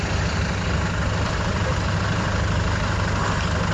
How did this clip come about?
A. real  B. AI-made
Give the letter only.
A